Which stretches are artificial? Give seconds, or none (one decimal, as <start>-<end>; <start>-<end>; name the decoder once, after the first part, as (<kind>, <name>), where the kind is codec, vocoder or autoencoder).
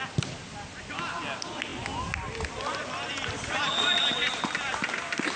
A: none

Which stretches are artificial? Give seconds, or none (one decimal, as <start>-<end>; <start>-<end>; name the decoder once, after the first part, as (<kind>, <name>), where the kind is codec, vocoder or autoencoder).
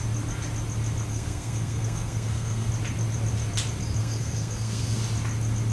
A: 1.1-2.7 (codec, SNAC); 4.0-5.0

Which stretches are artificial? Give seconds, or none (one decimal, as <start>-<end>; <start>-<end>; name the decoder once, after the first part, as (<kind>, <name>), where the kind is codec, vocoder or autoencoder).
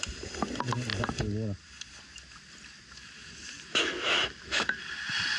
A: 3.7-4.8 (autoencoder, DAC-VAE)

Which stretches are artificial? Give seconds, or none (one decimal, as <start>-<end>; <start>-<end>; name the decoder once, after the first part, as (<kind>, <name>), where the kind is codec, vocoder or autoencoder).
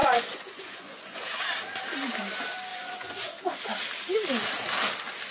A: 0.0-1.4 (vocoder, Vocos); 2.7-3.6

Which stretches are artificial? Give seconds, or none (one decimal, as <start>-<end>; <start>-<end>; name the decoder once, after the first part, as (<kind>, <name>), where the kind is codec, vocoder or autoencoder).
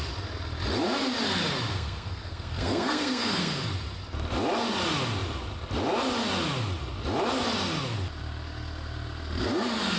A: 1.7-3.7 (codec, SNAC)